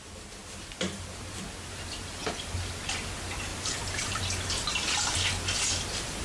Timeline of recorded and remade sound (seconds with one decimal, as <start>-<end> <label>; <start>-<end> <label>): 0.0-0.4 recorded; 0.4-2.7 remade; 2.7-3.5 recorded; 3.5-4.2 remade; 4.2-6.2 recorded